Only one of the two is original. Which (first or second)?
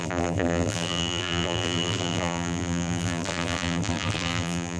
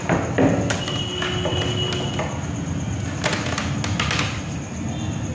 second